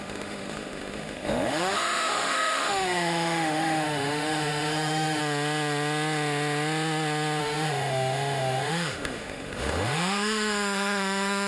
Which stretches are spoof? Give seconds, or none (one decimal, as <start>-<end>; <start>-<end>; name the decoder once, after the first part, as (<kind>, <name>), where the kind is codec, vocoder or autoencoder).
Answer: 0.0-5.2 (autoencoder, DAC-VAE); 7.4-11.5